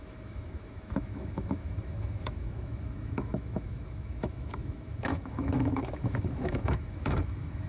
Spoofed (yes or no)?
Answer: yes